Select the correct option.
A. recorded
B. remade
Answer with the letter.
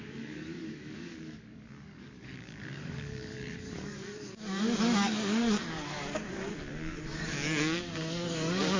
B